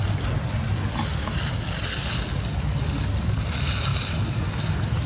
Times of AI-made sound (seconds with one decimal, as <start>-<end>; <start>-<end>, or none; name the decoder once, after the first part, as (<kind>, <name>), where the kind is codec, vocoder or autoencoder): none